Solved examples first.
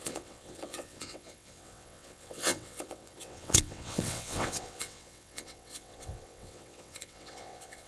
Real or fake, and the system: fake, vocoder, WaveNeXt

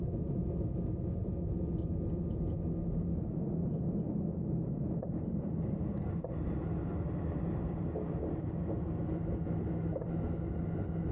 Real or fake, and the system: real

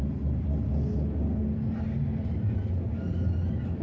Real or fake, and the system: real